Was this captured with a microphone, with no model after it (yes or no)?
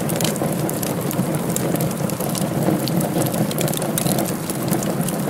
no